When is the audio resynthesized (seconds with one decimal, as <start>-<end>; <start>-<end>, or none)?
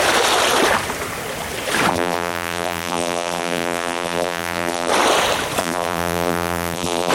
1.9-4.9; 5.6-7.1